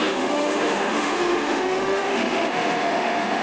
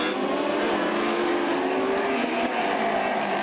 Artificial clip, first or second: first